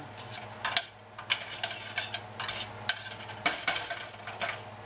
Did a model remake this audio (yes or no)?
no